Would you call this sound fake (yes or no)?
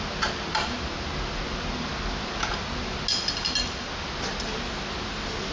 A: no